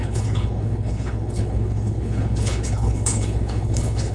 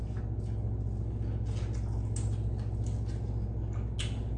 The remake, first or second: first